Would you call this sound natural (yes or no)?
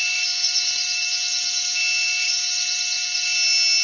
yes